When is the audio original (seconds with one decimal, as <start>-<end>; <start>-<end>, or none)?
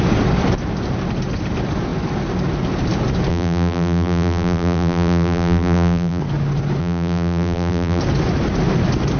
0.0-3.3; 6.2-6.8; 8.0-9.2